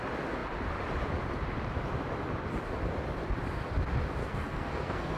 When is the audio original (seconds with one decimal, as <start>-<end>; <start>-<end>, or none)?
0.0-4.2